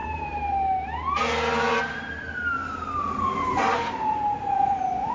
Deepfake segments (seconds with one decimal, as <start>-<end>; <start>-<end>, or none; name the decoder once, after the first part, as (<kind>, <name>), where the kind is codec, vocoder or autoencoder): 0.0-1.2 (vocoder, BigVGAN v2); 2.6-5.1